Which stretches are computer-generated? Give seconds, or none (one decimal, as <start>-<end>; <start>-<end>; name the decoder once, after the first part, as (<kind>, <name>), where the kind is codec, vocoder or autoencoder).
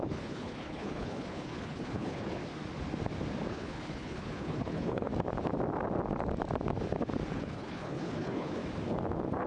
0.0-2.4 (codec, HILCodec); 3.5-5.1; 7.3-8.6